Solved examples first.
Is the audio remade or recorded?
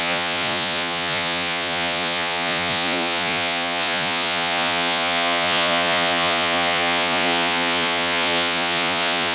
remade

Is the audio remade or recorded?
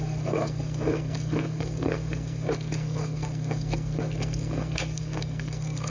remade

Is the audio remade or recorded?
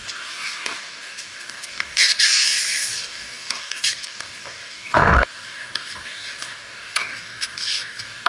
remade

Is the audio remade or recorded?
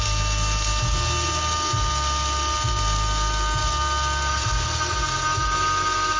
recorded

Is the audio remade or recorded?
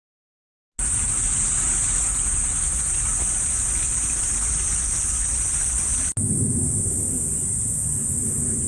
recorded